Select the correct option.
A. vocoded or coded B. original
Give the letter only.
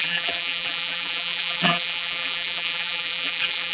A